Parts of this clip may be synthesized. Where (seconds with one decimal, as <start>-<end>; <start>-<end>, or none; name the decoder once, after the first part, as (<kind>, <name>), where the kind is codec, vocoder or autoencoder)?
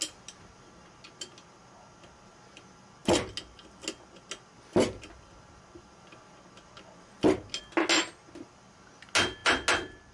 none